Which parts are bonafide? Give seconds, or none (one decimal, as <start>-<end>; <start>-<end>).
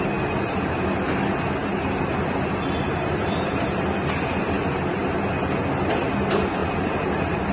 0.0-7.5